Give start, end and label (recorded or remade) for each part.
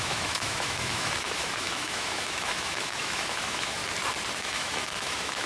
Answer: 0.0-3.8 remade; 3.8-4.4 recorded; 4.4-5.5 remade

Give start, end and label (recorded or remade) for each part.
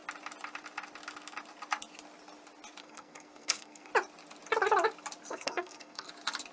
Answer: 0.0-2.8 recorded; 2.8-3.9 remade; 3.9-5.3 recorded; 5.3-6.1 remade; 6.1-6.5 recorded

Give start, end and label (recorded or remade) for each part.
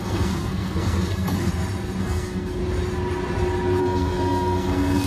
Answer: 0.0-1.5 remade; 1.5-2.0 recorded; 2.0-2.6 remade; 2.6-3.8 recorded; 3.8-5.1 remade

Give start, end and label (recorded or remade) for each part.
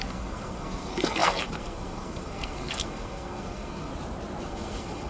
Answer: 0.0-3.9 remade; 3.9-4.4 recorded; 4.4-5.1 remade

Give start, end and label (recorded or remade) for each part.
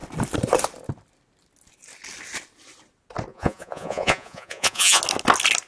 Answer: 0.0-3.3 recorded; 3.3-5.0 remade; 5.0-5.7 recorded